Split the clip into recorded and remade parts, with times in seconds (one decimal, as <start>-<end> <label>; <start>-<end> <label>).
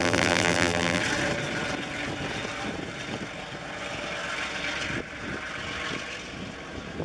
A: 0.0-1.0 remade; 1.0-7.0 recorded